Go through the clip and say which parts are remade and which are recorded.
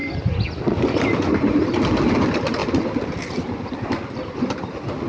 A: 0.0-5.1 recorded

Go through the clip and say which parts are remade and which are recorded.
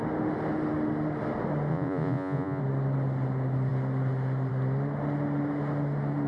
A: 0.0-1.7 recorded; 1.7-2.6 remade; 2.6-6.3 recorded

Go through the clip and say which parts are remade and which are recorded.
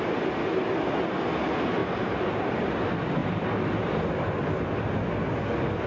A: 0.0-1.8 recorded; 1.8-2.6 remade; 2.6-5.9 recorded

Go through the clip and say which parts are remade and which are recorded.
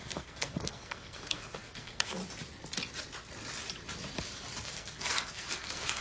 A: 0.0-2.2 remade; 2.2-4.6 recorded; 4.6-6.0 remade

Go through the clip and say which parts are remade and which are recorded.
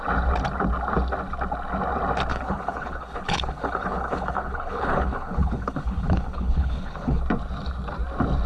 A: 0.0-2.3 recorded; 2.3-7.2 remade; 7.2-8.5 recorded